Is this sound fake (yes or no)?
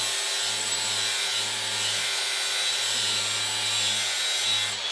no